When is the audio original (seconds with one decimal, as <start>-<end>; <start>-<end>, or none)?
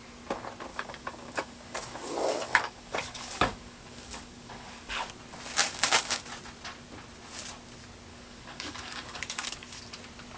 0.0-0.7; 5.1-5.6; 6.2-8.1; 9.8-10.4